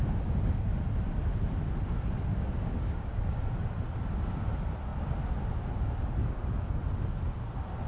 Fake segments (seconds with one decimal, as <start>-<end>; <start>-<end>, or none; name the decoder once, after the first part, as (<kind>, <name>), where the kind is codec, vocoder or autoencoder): 2.3-3.3 (codec, DAC); 6.2-6.8